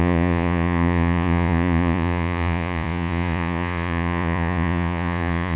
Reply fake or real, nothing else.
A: fake